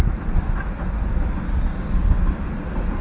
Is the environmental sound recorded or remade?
recorded